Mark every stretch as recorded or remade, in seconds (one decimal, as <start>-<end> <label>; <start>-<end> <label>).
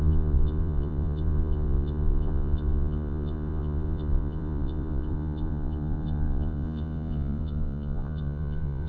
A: 0.0-8.9 remade